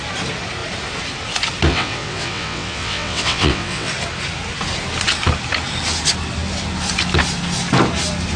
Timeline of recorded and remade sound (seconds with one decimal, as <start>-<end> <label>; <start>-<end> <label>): 0.0-1.7 recorded; 1.7-3.9 remade; 3.9-8.4 recorded

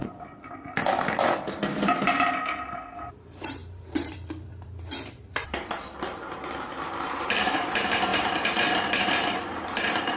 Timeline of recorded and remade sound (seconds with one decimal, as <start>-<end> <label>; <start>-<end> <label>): 0.0-3.1 recorded; 3.1-10.2 remade

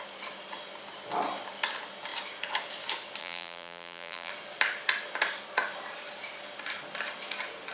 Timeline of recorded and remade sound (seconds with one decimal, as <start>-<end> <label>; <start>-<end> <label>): 0.0-3.2 recorded; 3.2-4.3 remade; 4.3-7.7 recorded

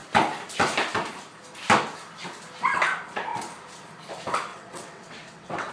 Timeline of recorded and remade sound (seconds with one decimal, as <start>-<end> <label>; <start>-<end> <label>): 0.0-4.5 recorded; 4.5-5.7 remade

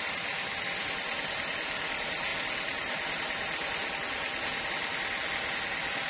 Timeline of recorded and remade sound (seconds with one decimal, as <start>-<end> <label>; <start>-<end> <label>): 0.0-6.1 recorded